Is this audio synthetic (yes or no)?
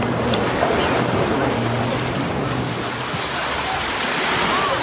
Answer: no